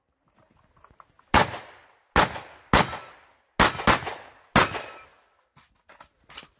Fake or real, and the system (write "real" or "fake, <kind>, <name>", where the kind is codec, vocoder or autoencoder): real